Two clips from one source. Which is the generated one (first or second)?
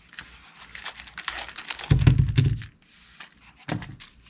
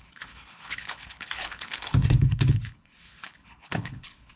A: second